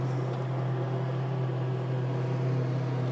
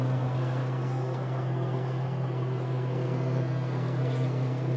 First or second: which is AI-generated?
second